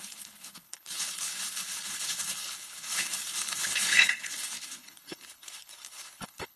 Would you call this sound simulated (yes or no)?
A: yes